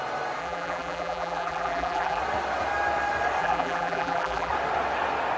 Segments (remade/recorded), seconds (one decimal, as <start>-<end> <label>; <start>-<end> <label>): 0.0-0.4 recorded; 0.4-2.2 remade; 2.2-3.4 recorded; 3.4-4.5 remade; 4.5-5.4 recorded